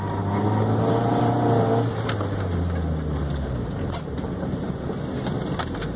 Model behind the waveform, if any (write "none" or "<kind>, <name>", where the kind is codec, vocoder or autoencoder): none